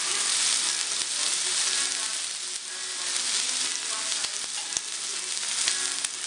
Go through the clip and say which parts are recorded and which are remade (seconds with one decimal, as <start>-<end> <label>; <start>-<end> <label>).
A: 0.0-6.3 recorded